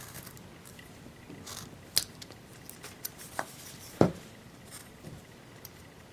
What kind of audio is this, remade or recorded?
recorded